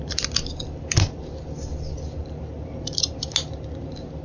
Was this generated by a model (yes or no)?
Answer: no